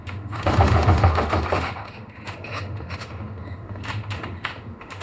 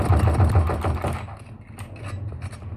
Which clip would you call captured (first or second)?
second